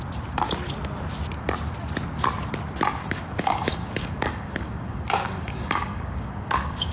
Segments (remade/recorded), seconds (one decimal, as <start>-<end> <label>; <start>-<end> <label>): 0.0-3.0 recorded; 3.0-6.9 remade